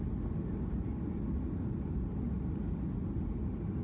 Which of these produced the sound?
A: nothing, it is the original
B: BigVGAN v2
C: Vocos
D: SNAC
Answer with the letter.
A